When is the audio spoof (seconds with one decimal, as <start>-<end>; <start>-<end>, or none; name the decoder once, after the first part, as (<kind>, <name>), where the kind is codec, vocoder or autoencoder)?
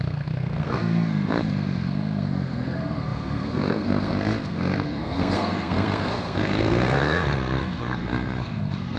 0.0-9.0 (codec, SNAC)